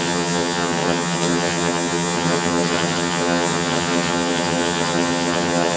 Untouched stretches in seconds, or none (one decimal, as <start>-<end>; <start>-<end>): none